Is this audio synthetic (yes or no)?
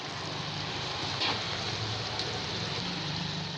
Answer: no